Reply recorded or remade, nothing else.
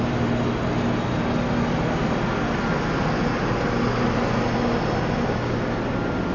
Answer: recorded